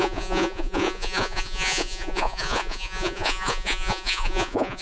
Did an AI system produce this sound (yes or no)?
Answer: yes